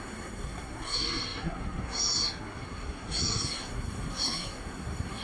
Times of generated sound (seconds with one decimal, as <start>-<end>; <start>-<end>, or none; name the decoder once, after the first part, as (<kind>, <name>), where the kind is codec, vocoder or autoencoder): 0.0-5.2 (codec, SNAC)